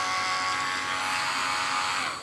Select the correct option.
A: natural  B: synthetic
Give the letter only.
A